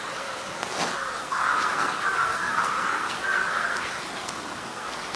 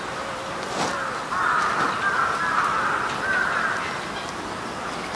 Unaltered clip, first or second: second